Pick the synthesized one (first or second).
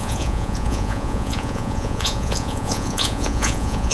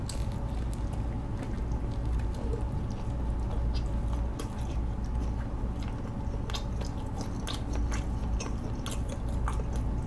first